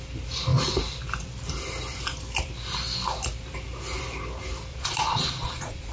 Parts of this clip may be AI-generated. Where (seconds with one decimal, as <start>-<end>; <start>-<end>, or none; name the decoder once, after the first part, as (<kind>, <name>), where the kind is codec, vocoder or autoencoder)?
4.7-5.9 (vocoder, Vocos)